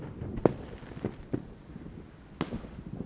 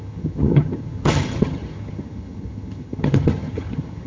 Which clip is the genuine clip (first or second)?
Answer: first